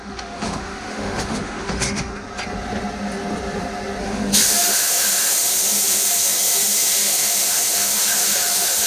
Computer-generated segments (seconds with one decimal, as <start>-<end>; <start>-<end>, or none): 0.0-2.1; 4.0-8.9